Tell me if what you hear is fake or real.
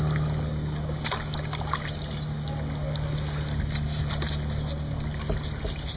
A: real